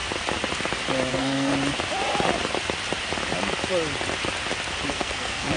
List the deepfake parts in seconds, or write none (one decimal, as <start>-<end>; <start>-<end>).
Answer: 1.1-1.5; 4.9-5.6